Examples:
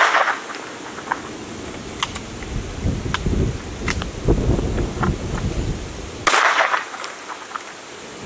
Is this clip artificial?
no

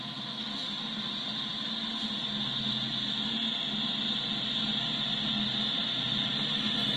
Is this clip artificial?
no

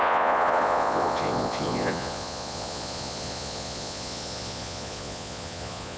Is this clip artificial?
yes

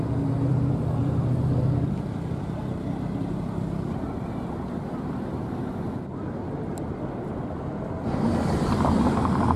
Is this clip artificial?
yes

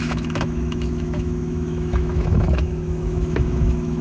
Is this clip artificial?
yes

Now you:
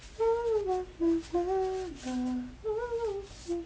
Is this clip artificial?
no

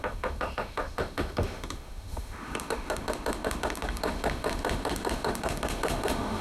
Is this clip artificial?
yes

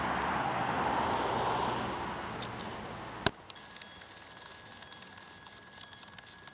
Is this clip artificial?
no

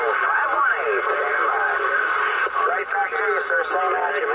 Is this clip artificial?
no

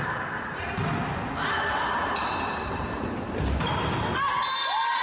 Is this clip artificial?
no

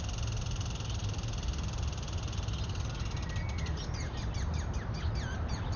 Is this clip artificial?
no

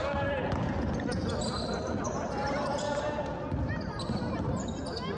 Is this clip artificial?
no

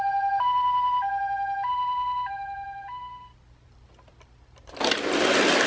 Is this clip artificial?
no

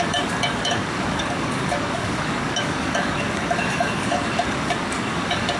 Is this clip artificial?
yes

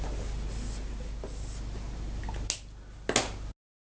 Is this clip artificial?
no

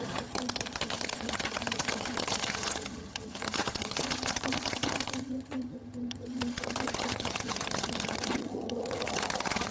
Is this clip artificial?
yes